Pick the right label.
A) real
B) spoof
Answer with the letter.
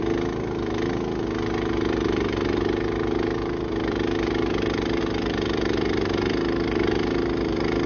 A